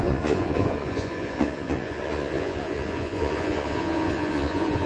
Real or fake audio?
fake